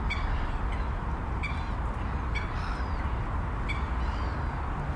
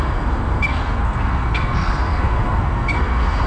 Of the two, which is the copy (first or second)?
second